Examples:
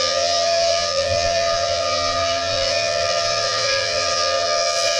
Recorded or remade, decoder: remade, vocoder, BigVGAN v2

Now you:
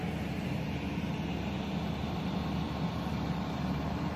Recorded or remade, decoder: remade, vocoder, BigVGAN v2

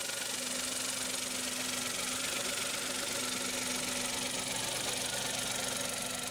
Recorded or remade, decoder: recorded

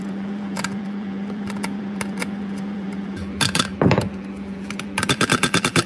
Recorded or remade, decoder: remade, vocoder, BigVGAN v2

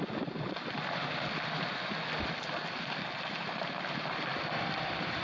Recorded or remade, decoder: recorded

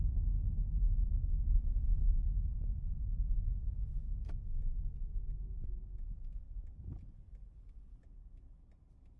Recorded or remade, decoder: recorded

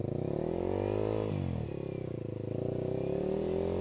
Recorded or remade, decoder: recorded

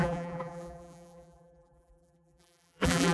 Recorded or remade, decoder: remade, vocoder, BigVGAN v2